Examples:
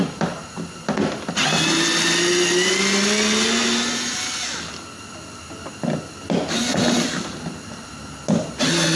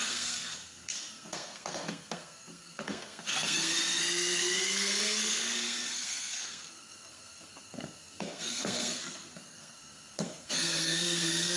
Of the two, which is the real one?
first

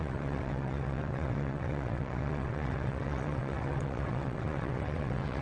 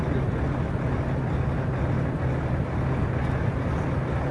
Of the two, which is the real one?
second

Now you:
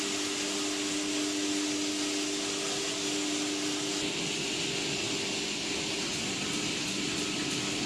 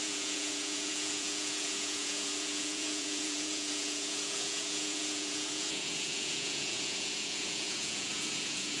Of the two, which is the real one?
first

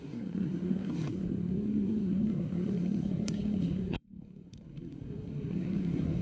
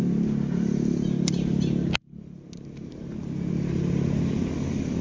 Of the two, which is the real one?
second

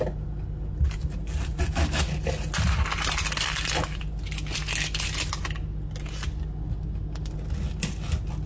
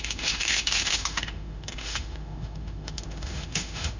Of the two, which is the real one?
first